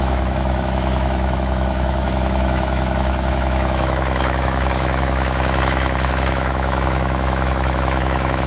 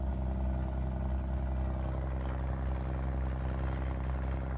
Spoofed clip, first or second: first